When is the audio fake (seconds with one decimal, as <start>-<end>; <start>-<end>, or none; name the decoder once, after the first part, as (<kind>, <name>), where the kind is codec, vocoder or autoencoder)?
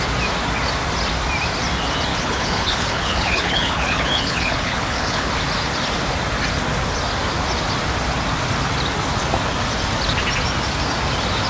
2.1-5.3 (codec, HILCodec)